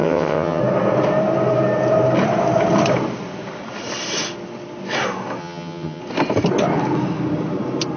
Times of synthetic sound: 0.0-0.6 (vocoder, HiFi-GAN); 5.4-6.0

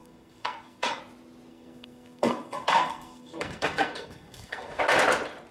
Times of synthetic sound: 0.0-1.0 (codec, SNAC); 1.5-4.8

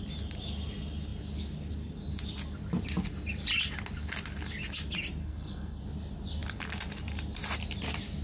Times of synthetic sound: 5.2-5.8 (codec, SNAC)

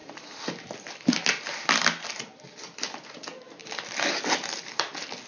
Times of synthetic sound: 0.0-1.1 (vocoder, BigVGAN v2); 3.6-4.2

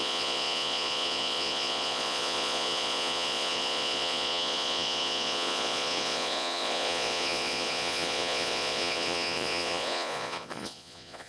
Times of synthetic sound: 0.0-11.3 (vocoder, Vocos)

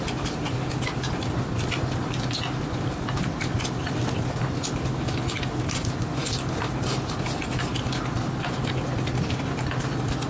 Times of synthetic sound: none

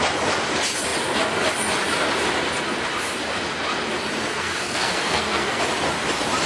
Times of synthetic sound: 4.3-5.6 (codec, SNAC)

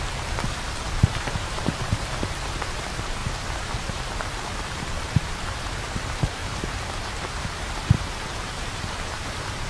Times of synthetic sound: 0.0-6.4 (vocoder, BigVGAN v2); 6.9-9.7